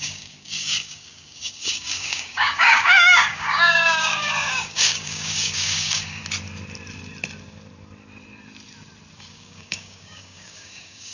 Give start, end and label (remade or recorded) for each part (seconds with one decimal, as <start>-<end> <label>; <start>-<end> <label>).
0.0-6.2 remade; 6.2-9.3 recorded; 9.3-11.1 remade